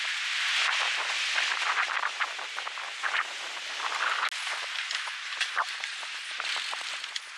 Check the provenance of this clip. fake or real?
real